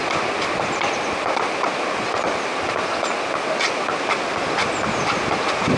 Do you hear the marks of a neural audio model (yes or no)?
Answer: no